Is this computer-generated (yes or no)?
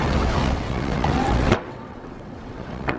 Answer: yes